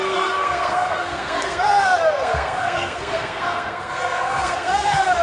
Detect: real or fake fake